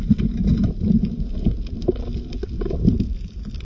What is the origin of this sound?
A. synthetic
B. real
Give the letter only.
B